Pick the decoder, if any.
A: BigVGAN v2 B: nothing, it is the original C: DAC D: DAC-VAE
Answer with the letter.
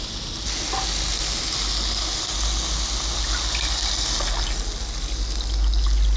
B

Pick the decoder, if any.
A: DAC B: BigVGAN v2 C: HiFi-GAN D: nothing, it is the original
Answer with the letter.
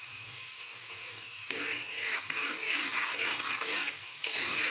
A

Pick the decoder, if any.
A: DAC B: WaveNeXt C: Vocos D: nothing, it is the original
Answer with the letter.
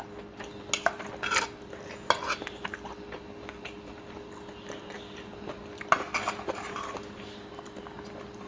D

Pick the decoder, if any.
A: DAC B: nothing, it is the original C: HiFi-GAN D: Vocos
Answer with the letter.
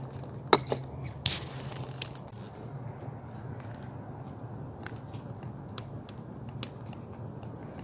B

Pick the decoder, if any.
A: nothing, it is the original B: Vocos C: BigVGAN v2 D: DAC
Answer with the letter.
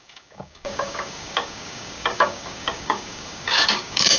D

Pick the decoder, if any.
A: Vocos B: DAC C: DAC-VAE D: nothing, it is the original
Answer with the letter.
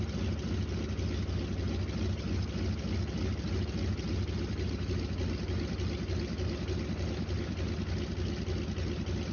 D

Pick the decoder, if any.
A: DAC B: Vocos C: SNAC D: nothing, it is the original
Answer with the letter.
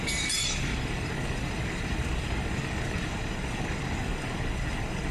A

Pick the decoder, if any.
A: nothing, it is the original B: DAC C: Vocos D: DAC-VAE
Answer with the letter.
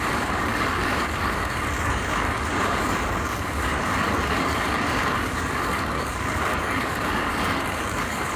B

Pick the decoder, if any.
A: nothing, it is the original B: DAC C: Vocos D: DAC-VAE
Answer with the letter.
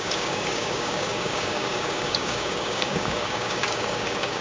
B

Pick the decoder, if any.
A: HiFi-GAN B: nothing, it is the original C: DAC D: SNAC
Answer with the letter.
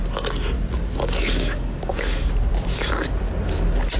B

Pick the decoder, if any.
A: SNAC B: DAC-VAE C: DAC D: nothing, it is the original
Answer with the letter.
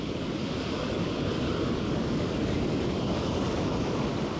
C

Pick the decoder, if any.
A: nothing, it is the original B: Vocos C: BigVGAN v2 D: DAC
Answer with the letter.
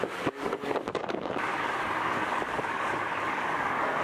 D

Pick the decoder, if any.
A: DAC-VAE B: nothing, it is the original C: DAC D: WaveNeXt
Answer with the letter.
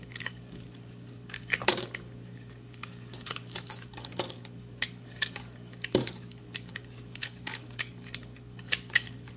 C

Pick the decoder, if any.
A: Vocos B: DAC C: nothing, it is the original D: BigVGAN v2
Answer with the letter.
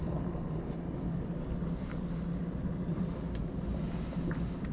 C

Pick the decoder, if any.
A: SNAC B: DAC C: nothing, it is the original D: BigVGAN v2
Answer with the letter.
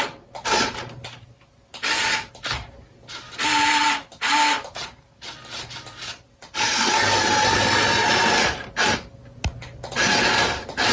C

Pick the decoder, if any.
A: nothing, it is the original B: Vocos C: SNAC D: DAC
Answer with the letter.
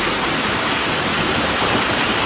A